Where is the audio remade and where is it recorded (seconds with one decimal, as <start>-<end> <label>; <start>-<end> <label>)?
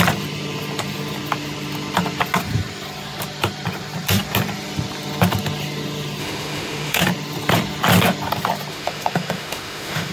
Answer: 0.0-6.2 recorded; 6.2-7.0 remade; 7.0-8.7 recorded; 8.7-10.1 remade